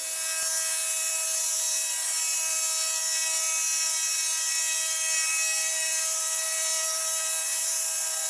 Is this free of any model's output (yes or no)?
yes